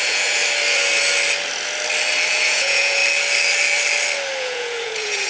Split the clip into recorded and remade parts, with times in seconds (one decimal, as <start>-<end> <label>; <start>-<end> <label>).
0.0-0.4 remade; 0.4-2.3 recorded; 2.3-3.0 remade; 3.0-4.4 recorded; 4.4-5.3 remade